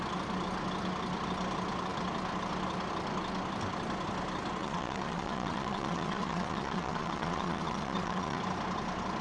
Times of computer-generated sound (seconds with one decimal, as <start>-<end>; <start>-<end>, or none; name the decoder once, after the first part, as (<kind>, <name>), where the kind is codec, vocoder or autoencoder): 4.6-8.4 (vocoder, Vocos)